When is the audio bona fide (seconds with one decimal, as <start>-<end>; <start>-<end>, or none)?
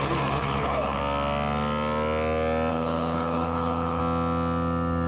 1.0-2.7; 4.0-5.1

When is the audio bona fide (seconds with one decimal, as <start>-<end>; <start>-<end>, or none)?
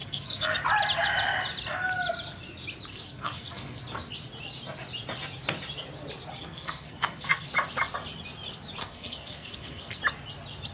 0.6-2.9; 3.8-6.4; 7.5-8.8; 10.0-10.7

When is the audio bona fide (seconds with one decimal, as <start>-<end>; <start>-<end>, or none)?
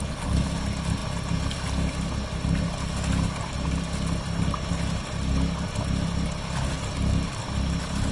0.0-8.1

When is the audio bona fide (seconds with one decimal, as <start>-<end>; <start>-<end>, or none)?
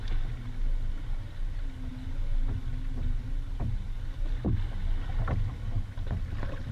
0.0-6.7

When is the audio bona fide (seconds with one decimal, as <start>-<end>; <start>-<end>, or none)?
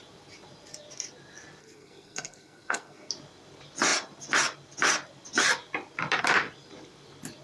0.0-1.6; 3.1-7.4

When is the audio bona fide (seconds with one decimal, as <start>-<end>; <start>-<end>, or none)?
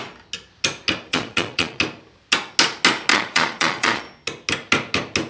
0.0-1.1; 1.8-3.1; 4.0-5.3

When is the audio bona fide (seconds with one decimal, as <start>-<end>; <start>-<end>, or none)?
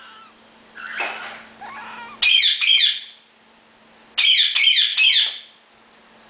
0.0-6.3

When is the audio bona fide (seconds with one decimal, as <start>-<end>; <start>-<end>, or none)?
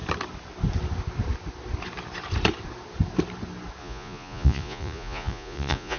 0.0-3.8